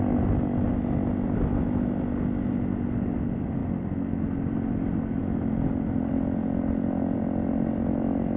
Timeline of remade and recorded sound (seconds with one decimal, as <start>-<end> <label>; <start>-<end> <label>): 0.0-8.4 recorded